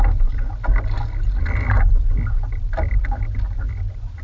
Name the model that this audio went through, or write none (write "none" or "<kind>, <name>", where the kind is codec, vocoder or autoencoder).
none